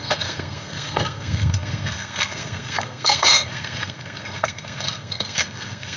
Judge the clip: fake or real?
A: fake